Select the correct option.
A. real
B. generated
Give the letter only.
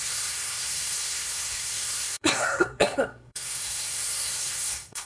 B